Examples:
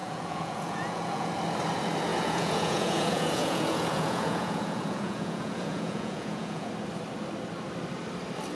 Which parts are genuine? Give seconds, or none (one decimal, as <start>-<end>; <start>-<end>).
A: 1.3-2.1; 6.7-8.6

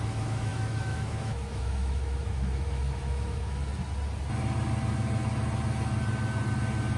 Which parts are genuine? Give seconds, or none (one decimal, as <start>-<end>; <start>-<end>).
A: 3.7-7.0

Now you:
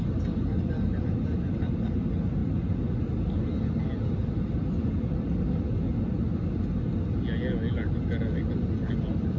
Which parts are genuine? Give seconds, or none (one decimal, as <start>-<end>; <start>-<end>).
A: 0.0-9.4